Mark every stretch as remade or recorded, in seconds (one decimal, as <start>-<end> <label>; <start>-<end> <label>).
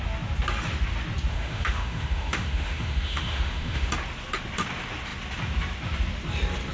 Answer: 0.0-1.3 recorded; 1.3-3.9 remade; 3.9-6.7 recorded